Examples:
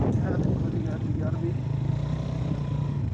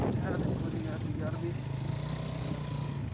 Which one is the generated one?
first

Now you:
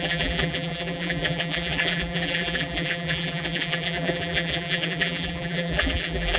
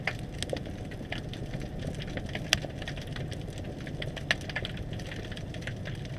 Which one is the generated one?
first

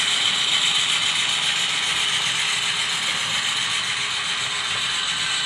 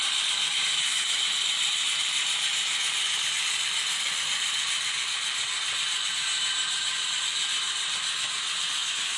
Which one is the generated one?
second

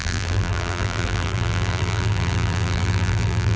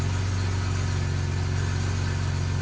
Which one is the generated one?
first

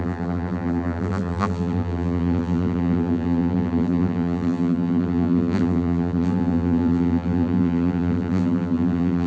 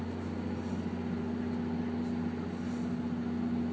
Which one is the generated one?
first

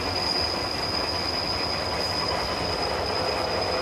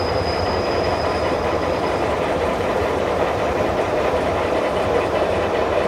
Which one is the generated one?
second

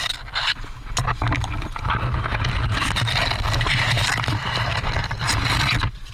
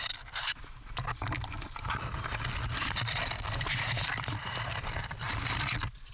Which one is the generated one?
second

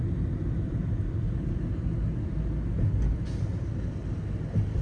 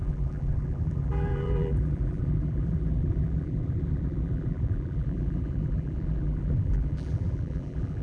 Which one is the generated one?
second